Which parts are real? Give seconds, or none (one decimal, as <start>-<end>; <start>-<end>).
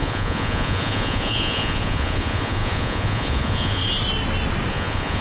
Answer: 3.8-4.7